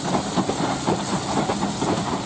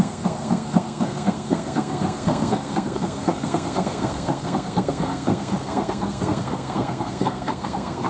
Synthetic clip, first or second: second